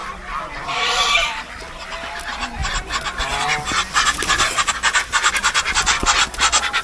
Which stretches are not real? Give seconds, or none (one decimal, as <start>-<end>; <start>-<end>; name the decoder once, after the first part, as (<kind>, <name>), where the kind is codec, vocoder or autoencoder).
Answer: 0.0-1.5 (vocoder, BigVGAN v2); 5.4-6.0